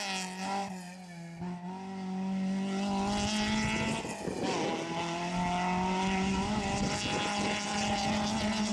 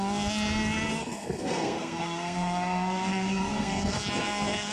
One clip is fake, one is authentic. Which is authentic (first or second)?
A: first